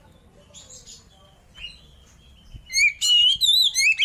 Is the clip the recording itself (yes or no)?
yes